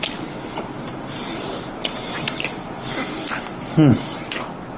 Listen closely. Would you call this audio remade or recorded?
recorded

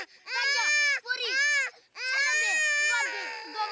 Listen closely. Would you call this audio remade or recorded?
recorded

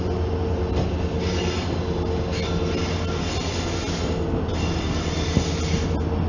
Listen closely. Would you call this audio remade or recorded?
recorded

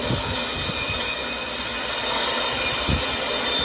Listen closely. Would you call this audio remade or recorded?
recorded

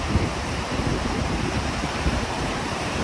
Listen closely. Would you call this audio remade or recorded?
remade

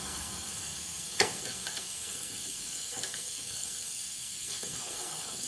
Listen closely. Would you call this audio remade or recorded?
remade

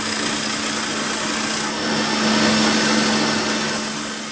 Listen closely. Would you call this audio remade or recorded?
recorded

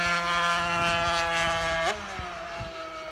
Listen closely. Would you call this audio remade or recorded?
recorded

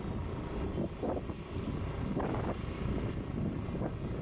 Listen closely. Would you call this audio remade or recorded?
recorded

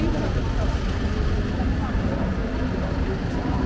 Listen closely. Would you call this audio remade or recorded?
recorded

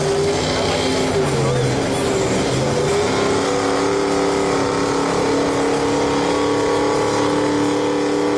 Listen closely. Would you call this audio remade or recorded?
recorded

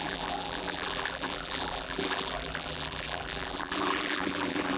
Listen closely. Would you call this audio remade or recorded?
remade